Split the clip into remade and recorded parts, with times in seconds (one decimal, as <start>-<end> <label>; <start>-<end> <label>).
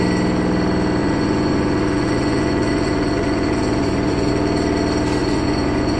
0.0-1.0 recorded; 1.0-4.3 remade; 4.3-5.2 recorded; 5.2-6.0 remade